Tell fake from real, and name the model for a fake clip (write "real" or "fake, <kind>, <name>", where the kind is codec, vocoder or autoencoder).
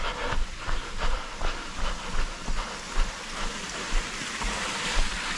real